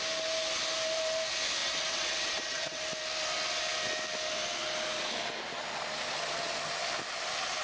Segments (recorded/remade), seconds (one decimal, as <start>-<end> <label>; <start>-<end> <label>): 0.0-1.6 recorded; 1.6-2.8 remade; 2.8-7.6 recorded